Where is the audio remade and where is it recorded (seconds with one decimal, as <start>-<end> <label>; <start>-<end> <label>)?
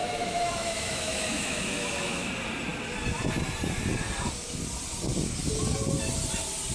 0.0-2.3 remade; 2.3-6.7 recorded